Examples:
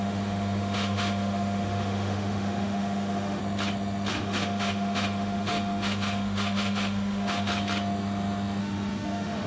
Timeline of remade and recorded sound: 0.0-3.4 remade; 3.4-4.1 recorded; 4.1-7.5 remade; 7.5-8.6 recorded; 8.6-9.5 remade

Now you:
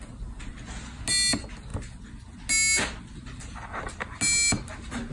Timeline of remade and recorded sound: 0.0-5.1 recorded

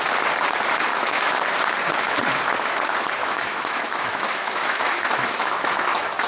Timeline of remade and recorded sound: 0.0-0.9 recorded; 0.9-1.4 remade; 1.4-3.2 recorded; 3.2-6.3 remade

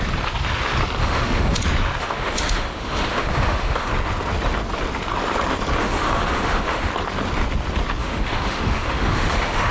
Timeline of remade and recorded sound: 0.0-1.0 recorded; 1.0-1.6 remade; 1.6-2.0 recorded; 2.0-3.9 remade; 3.9-5.8 recorded; 5.8-6.9 remade; 6.9-8.0 recorded; 8.0-9.7 remade